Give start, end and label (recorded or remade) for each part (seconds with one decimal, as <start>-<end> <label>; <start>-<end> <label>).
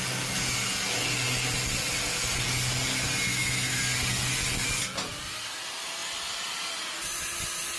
0.0-3.3 recorded; 3.3-3.8 remade; 3.8-7.8 recorded